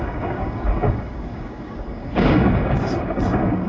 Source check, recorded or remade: remade